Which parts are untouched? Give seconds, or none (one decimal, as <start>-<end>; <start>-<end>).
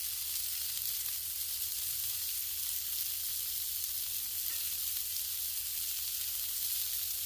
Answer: 0.0-7.3